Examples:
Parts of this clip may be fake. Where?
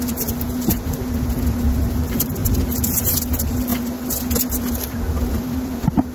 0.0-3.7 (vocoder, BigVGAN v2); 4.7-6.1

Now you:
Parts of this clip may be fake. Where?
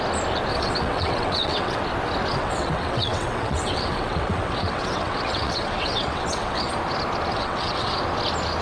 0.5-1.8 (vocoder, WaveNeXt); 2.3-6.7; 7.3-8.0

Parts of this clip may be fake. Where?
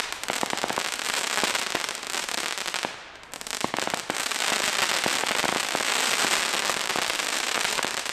none